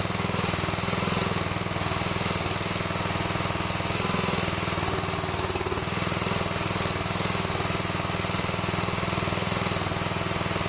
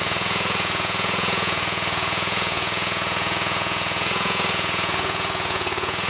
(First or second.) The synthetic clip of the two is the second